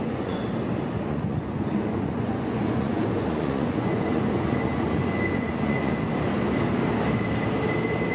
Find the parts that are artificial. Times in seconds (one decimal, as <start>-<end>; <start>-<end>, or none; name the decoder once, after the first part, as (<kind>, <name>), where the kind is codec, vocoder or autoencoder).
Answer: 0.0-0.4 (vocoder, Vocos); 1.1-5.9